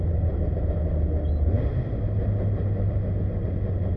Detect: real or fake real